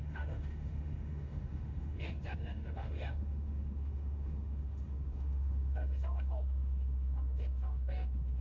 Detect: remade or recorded remade